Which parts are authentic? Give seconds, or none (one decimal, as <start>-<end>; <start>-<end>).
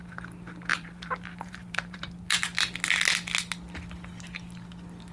0.0-0.7; 2.0-5.1